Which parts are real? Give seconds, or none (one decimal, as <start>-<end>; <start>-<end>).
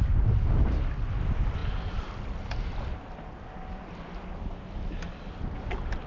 0.0-6.1